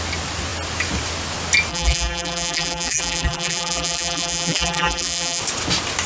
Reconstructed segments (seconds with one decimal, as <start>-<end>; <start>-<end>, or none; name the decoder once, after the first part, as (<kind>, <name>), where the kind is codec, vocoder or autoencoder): 1.7-5.4 (vocoder, BigVGAN v2)

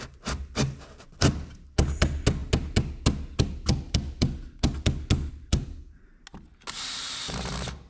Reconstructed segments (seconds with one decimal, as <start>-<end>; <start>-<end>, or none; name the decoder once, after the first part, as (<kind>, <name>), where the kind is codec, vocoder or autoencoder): none

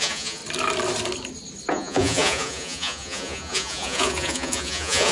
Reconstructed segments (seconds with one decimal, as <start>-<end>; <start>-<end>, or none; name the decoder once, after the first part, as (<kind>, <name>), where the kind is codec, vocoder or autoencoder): 0.0-0.4 (vocoder, Vocos); 1.7-5.1

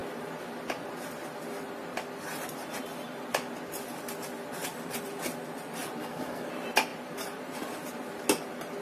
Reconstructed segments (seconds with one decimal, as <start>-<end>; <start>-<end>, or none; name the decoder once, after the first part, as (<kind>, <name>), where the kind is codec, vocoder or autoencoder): 6.0-6.5 (codec, SNAC)